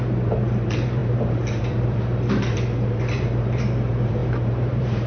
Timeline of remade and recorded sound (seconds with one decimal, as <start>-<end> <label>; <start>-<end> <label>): 0.0-5.1 remade